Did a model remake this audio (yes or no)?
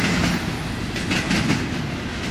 no